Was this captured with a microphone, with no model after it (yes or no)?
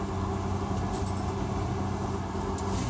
yes